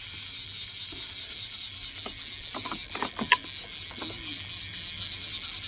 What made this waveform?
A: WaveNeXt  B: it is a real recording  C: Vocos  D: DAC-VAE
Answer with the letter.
B